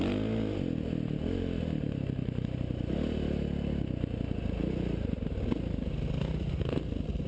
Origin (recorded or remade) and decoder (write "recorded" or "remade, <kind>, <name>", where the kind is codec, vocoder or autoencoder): recorded